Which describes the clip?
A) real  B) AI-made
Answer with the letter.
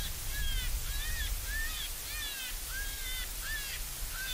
A